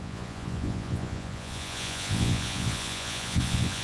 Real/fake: fake